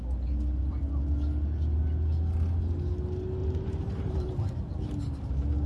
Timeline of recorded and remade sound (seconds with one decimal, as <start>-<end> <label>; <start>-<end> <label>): 0.0-3.4 recorded; 3.4-4.5 remade; 4.5-5.7 recorded